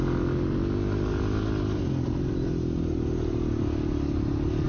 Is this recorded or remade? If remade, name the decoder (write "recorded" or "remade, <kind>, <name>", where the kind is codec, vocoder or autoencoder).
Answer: recorded